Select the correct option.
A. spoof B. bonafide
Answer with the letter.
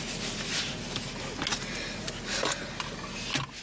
B